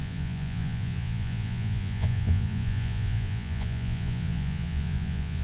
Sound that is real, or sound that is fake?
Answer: fake